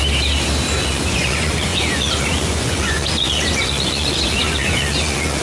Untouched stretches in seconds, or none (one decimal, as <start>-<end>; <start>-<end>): 0.0-0.8